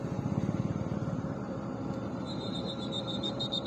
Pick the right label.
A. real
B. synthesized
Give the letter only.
B